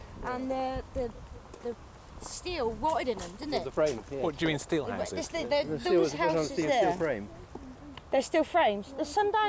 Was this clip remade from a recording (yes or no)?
no